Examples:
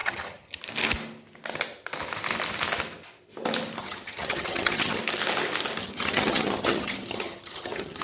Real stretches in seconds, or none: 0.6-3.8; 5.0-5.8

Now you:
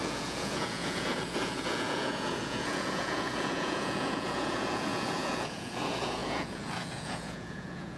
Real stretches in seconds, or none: none